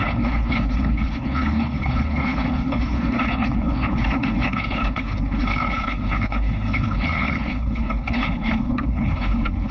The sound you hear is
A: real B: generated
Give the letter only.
B